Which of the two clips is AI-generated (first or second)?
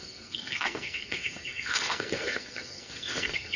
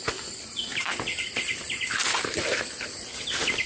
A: first